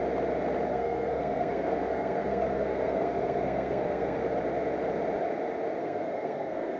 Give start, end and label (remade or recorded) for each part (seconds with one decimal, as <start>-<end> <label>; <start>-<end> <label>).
0.0-0.7 recorded; 0.7-4.2 remade; 4.2-5.8 recorded; 5.8-6.8 remade